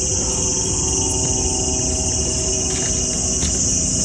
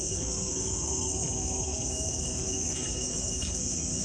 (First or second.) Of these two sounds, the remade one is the second